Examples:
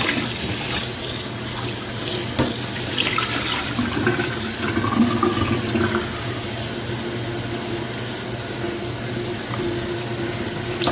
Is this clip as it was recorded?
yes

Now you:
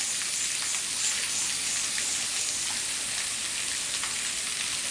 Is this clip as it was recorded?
yes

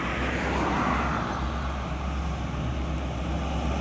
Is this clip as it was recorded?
yes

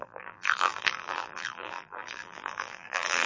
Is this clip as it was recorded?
no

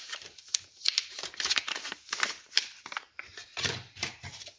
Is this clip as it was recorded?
no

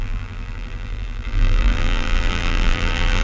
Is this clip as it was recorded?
no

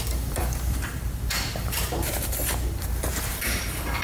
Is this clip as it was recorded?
no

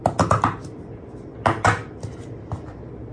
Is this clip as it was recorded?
yes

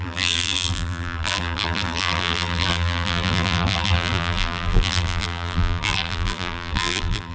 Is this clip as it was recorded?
no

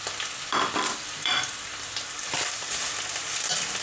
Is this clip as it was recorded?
no